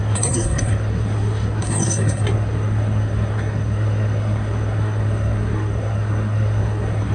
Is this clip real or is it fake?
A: fake